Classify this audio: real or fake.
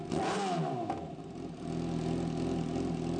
real